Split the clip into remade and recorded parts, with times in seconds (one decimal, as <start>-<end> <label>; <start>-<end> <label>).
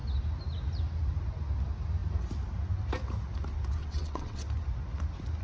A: 0.0-3.8 recorded; 3.8-4.4 remade; 4.4-5.4 recorded